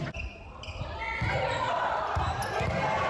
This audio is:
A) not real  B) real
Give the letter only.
B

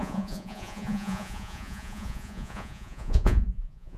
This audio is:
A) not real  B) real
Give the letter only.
A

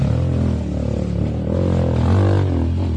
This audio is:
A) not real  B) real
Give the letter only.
B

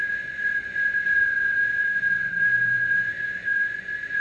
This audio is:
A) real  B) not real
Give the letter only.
B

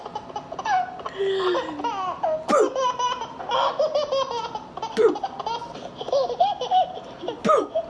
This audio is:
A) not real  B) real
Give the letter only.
B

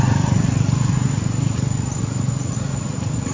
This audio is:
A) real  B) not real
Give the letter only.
B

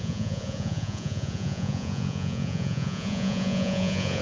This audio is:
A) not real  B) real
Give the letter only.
A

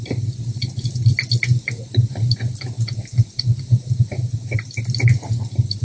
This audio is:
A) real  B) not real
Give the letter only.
A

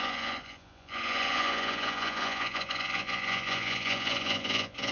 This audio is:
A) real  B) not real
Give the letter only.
B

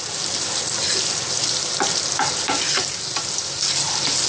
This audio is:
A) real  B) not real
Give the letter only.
A